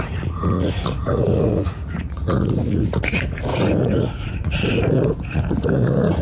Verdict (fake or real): fake